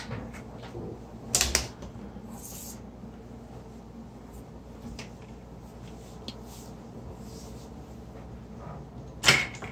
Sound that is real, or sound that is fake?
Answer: real